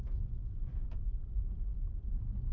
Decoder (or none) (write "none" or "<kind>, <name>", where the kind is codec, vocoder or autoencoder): none